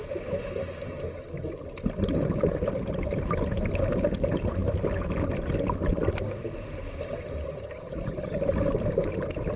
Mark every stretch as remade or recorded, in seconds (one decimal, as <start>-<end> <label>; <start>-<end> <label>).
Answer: 0.0-9.6 recorded

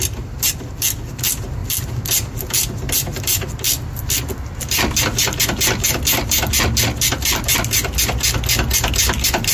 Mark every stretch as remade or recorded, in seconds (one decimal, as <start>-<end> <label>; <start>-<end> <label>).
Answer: 0.0-9.5 recorded

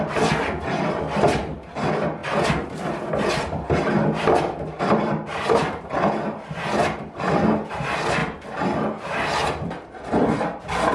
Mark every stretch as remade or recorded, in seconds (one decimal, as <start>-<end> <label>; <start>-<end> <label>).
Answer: 0.0-8.2 remade; 8.2-9.9 recorded; 9.9-10.9 remade

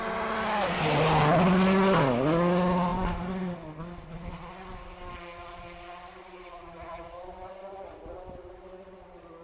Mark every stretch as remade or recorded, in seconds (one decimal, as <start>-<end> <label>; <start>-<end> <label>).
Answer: 0.0-6.2 recorded; 6.2-7.5 remade; 7.5-9.4 recorded

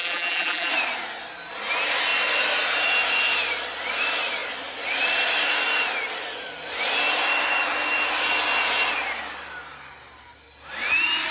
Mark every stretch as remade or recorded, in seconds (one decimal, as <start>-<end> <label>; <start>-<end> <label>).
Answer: 0.0-0.7 remade; 0.7-11.3 recorded

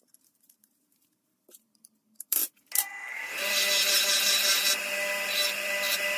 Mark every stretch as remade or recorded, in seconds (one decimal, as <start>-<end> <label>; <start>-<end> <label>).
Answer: 0.0-2.4 remade; 2.4-4.2 recorded; 4.2-6.2 remade

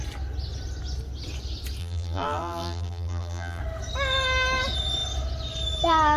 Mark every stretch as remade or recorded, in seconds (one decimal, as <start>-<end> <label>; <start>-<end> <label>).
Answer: 0.0-1.8 recorded; 1.8-3.6 remade; 3.6-6.2 recorded